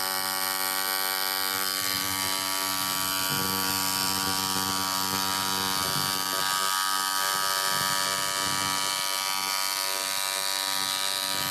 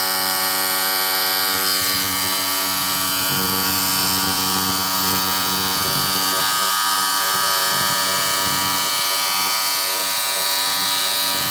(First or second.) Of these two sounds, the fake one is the second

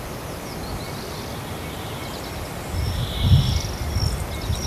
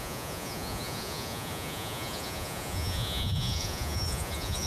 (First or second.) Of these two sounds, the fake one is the second